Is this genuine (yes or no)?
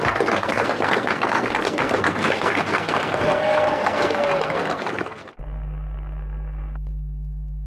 no